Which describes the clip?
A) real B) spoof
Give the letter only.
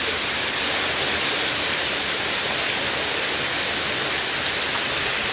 A